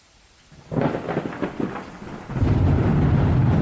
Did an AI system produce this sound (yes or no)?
no